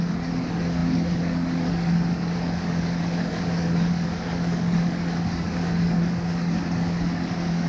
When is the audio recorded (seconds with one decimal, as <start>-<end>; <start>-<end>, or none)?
none